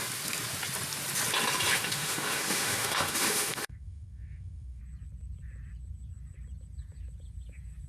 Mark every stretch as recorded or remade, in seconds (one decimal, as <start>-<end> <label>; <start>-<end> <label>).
0.0-1.7 recorded; 1.7-4.8 remade; 4.8-7.9 recorded